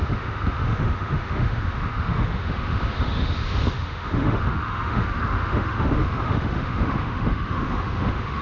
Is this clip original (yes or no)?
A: no